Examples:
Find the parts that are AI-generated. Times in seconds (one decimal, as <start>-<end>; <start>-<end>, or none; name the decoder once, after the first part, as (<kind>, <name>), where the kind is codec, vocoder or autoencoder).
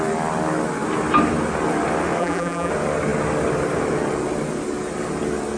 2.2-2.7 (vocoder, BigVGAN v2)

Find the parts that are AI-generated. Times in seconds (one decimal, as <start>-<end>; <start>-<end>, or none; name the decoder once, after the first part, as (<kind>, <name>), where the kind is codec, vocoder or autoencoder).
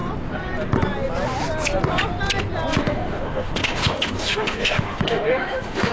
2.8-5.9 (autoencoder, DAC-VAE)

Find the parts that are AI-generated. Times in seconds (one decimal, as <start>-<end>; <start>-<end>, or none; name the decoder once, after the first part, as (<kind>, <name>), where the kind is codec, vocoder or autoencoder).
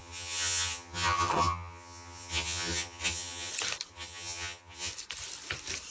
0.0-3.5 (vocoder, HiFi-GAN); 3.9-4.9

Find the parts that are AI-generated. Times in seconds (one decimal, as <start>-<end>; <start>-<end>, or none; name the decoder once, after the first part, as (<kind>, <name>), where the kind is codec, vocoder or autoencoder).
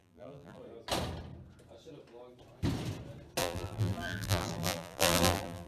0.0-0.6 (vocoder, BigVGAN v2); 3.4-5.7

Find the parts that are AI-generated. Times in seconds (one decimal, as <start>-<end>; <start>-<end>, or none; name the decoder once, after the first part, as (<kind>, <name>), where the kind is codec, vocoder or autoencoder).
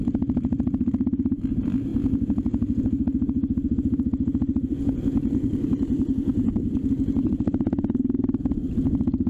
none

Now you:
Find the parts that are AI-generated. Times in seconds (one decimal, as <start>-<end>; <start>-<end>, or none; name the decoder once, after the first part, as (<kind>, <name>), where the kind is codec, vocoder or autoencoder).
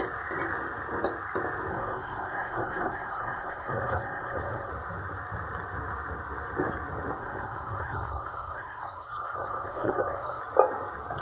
1.7-4.7 (codec, SNAC); 7.2-10.4